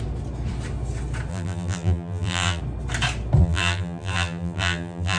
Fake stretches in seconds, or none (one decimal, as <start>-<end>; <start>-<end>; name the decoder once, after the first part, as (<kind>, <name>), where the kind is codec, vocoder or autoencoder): 1.3-2.6 (vocoder, BigVGAN v2); 3.4-5.2